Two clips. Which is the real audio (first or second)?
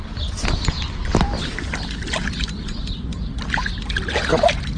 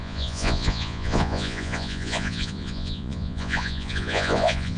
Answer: first